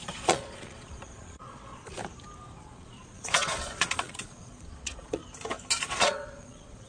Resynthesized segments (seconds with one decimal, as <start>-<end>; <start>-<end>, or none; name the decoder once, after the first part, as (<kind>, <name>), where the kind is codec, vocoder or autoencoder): 0.0-2.0 (vocoder, Vocos); 2.6-5.2; 5.8-6.9